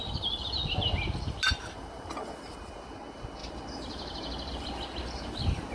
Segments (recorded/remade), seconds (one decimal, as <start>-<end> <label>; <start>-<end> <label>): 0.0-5.7 recorded